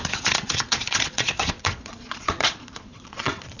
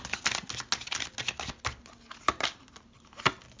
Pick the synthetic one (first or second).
first